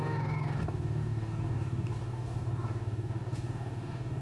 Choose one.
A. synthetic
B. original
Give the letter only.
A